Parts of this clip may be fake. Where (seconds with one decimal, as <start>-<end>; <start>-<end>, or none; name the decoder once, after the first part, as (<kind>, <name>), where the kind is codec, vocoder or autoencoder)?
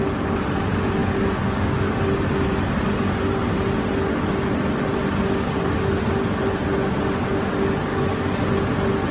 1.0-2.0 (codec, DAC); 7.9-8.4